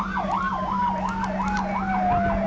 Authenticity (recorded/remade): recorded